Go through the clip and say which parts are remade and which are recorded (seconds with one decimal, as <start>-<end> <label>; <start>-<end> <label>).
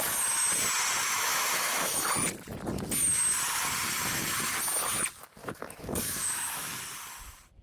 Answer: 0.0-1.0 recorded; 1.0-2.1 remade; 2.1-5.4 recorded; 5.4-6.8 remade; 6.8-7.6 recorded